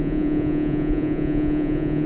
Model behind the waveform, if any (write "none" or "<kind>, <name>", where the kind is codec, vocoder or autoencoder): vocoder, Vocos